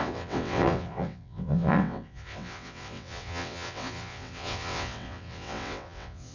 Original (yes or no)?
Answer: no